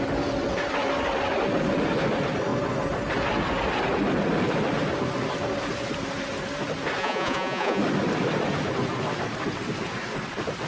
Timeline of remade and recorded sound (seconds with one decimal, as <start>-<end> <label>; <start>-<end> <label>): 0.0-7.0 recorded; 7.0-7.8 remade; 7.8-10.7 recorded

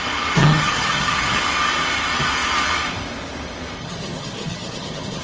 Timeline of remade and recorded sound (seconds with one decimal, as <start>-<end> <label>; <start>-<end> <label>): 0.0-0.4 recorded; 0.4-1.4 remade; 1.4-3.8 recorded; 3.8-5.2 remade

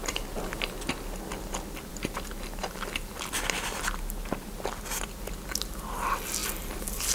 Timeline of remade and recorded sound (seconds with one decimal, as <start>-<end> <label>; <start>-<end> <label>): 0.0-7.1 recorded